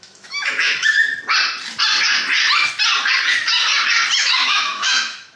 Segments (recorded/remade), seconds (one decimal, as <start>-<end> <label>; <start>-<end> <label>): 0.0-1.1 remade; 1.1-4.2 recorded; 4.2-5.4 remade